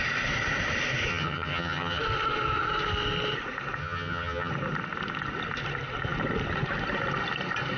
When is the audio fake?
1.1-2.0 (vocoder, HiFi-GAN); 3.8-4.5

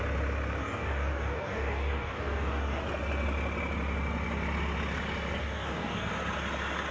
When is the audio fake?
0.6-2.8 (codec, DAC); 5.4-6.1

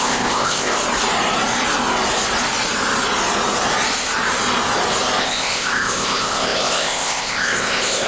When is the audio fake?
0.0-0.8 (codec, ZipCodec); 5.2-8.1

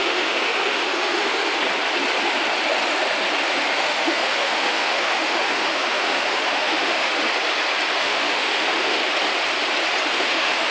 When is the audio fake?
0.0-1.4 (autoencoder, DAC-VAE); 3.7-7.1; 8.0-9.0; 10.1-10.7

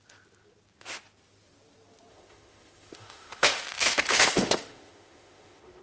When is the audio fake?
2.1-5.8 (autoencoder, DAC-VAE)